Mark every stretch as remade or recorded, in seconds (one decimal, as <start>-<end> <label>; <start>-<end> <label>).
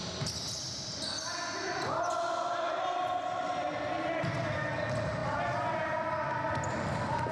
0.0-7.3 recorded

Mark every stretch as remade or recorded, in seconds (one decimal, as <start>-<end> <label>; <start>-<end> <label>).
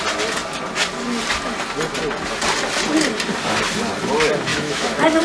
0.0-4.5 recorded; 4.5-5.2 remade